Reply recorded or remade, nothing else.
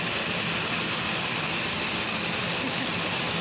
recorded